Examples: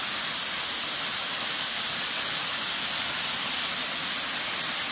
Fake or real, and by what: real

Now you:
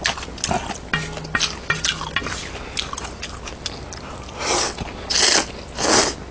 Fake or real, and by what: real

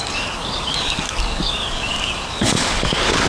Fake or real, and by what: fake, codec, DAC